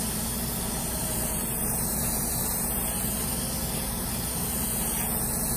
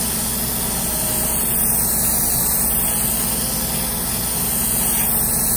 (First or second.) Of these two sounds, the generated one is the first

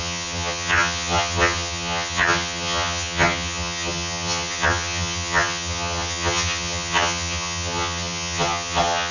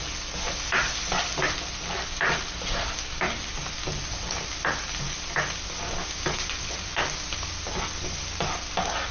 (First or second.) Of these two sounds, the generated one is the first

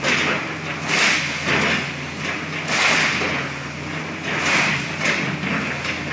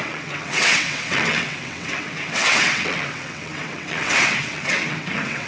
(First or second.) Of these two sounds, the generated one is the second